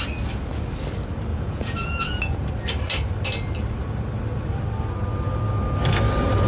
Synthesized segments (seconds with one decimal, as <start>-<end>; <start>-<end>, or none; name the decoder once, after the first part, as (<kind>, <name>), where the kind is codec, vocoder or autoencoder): 1.3-2.5 (vocoder, Vocos)